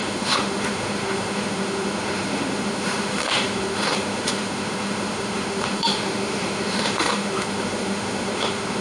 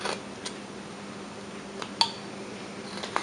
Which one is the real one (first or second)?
second